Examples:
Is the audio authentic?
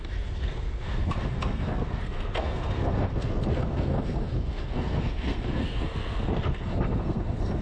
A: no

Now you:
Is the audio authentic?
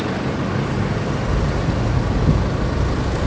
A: yes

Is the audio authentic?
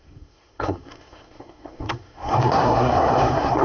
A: no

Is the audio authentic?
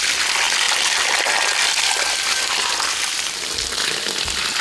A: yes